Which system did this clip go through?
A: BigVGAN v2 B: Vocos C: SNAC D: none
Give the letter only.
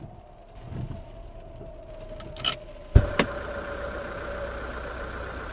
D